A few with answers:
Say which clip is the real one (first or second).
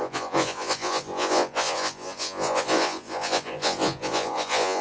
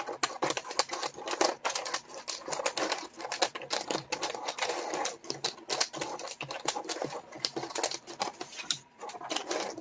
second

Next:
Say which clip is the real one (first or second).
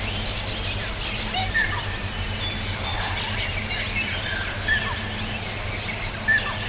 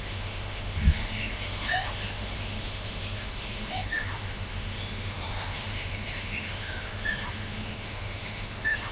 first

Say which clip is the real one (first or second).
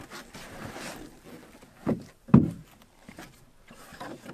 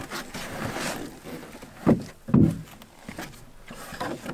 second